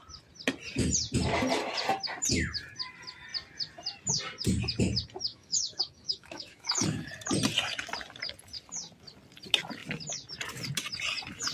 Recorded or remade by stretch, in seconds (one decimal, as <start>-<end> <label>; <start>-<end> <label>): 0.0-5.3 recorded; 5.3-7.1 remade; 7.1-11.5 recorded